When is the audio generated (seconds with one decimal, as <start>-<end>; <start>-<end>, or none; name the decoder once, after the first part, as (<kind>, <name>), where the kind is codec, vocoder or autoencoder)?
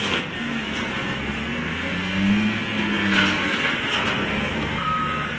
0.0-5.4 (codec, SNAC)